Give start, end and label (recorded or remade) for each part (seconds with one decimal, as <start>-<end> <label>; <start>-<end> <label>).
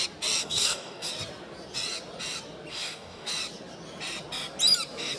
0.0-0.4 recorded; 0.4-1.1 remade; 1.1-2.7 recorded; 2.7-3.3 remade; 3.3-5.2 recorded